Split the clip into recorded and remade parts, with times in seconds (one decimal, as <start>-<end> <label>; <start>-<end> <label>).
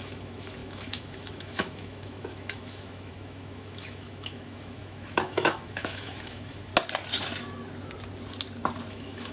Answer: 0.0-6.7 remade; 6.7-8.9 recorded; 8.9-9.3 remade